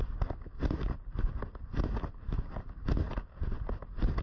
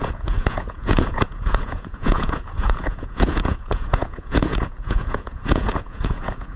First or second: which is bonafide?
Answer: first